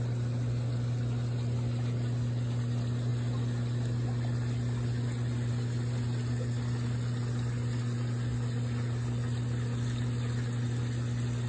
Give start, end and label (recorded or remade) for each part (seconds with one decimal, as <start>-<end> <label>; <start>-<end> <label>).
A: 0.0-11.5 recorded